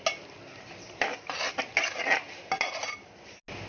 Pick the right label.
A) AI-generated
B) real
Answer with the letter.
B